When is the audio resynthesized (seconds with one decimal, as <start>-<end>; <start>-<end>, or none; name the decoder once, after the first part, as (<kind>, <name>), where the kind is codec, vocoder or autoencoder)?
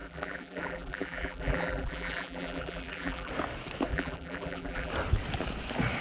0.0-3.3 (vocoder, BigVGAN v2); 3.9-4.9